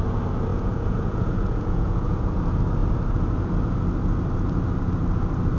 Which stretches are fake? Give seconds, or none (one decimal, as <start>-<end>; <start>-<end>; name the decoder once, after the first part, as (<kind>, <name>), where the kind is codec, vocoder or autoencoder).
0.5-2.4 (vocoder, Vocos)